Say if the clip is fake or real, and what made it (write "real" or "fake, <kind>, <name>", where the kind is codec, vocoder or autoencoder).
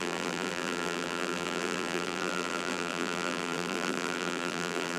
fake, vocoder, BigVGAN v2